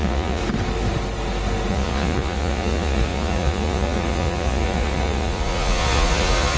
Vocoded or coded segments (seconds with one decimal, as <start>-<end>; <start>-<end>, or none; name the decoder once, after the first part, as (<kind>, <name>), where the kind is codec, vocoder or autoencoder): 0.0-0.4 (vocoder, Vocos); 1.7-6.6